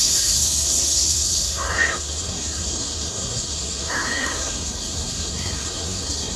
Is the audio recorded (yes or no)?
no